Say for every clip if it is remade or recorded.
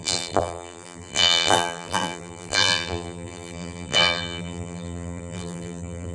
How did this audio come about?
remade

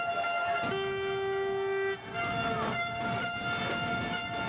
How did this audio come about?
recorded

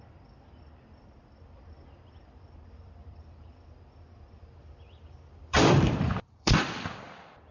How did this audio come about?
remade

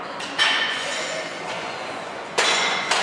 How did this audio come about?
remade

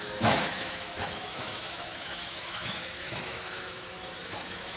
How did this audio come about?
remade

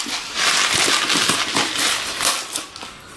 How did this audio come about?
recorded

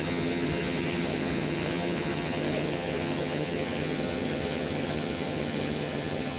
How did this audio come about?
remade